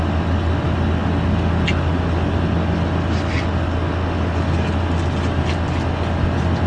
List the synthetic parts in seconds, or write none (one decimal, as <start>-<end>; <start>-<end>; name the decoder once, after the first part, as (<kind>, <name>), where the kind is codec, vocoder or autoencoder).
none